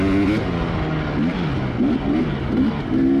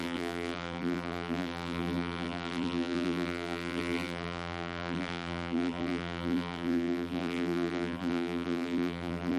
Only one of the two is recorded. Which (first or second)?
first